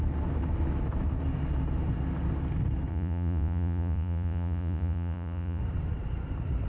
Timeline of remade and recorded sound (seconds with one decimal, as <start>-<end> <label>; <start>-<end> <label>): 0.0-2.9 recorded; 2.9-5.6 remade; 5.6-6.7 recorded